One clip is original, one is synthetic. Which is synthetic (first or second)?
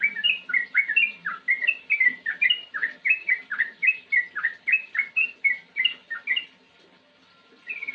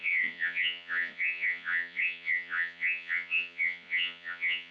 second